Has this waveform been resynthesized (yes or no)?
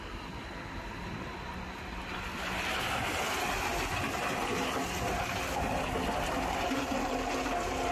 no